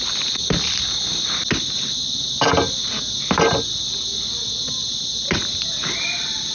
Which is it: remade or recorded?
recorded